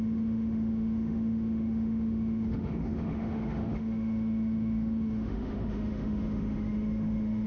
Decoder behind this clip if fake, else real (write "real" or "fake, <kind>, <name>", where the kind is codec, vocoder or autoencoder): fake, autoencoder, DAC-VAE